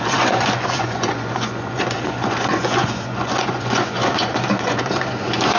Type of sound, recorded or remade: remade